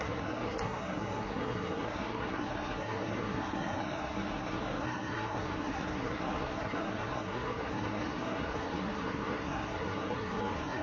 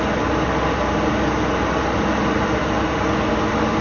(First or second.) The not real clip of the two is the first